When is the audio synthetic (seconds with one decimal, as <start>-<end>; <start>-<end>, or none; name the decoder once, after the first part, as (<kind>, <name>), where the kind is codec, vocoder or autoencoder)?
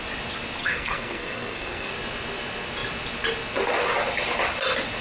0.6-1.9 (codec, SNAC)